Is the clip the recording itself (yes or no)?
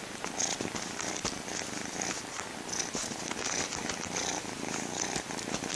yes